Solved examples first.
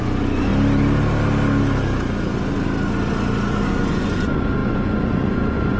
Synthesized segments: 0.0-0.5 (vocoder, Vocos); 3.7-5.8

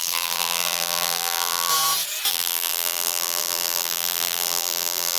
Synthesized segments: 0.0-1.7 (vocoder, BigVGAN v2); 2.3-5.2

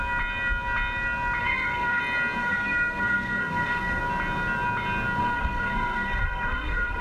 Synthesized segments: 1.4-2.0 (codec, SNAC); 2.4-4.0; 5.2-7.0

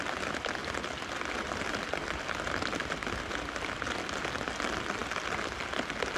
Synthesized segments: none

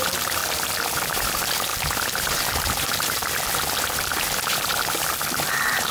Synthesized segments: 0.0-0.4 (vocoder, BigVGAN v2); 1.0-1.7; 2.2-3.2; 5.5-5.9

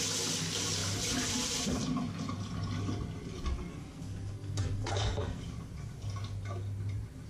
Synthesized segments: 3.7-5.4 (codec, SNAC)

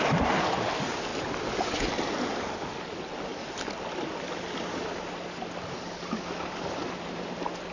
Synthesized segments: none